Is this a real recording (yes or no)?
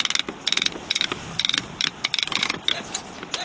yes